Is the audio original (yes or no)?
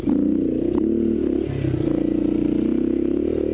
yes